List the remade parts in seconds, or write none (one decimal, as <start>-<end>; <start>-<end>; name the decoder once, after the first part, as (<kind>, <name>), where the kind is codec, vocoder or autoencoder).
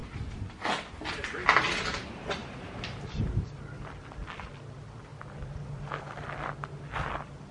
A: 0.0-0.9 (vocoder, BigVGAN v2); 2.4-3.4; 5.1-6.0